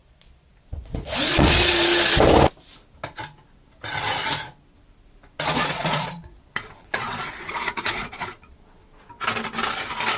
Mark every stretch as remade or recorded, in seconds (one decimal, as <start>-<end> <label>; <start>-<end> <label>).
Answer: 0.0-1.9 remade; 1.9-5.4 recorded; 5.4-8.8 remade; 8.8-10.2 recorded